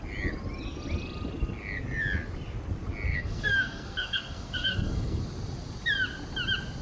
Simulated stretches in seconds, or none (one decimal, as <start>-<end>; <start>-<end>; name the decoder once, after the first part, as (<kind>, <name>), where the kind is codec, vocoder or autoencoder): 3.1-5.2 (codec, SNAC)